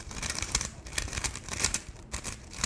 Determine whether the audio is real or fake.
fake